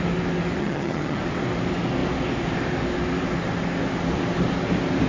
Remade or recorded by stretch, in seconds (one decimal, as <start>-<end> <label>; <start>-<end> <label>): 0.0-0.6 recorded; 0.6-1.2 remade; 1.2-5.1 recorded